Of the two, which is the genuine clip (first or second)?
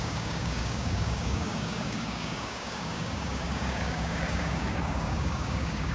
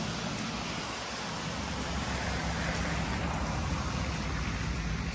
second